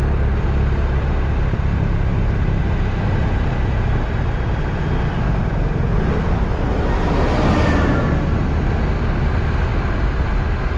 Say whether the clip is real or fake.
real